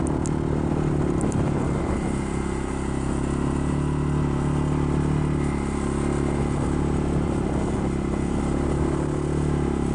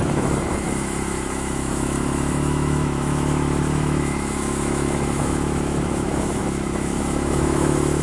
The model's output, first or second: second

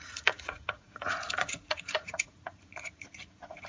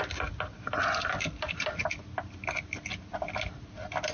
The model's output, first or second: first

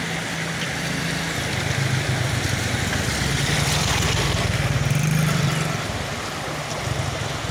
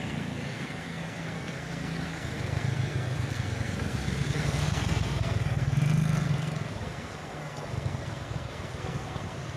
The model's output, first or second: second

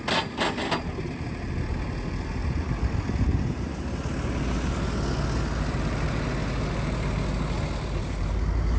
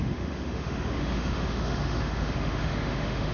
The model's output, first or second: second